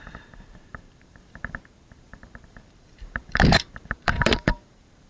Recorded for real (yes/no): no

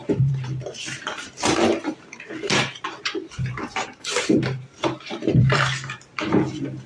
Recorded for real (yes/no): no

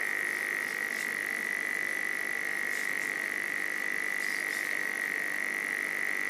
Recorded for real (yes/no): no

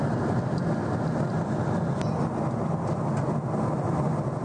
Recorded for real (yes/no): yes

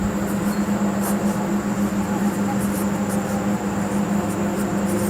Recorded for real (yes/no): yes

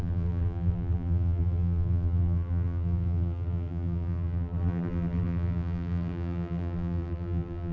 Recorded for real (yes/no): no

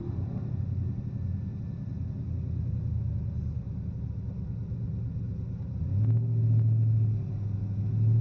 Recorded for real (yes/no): yes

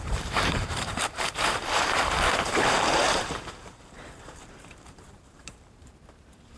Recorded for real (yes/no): no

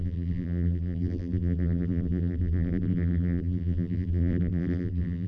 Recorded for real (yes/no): no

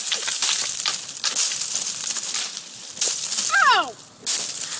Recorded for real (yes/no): yes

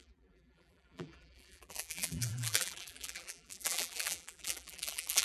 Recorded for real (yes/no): no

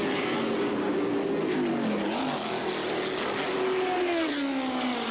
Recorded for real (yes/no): yes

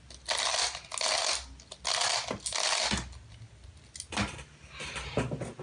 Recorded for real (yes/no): yes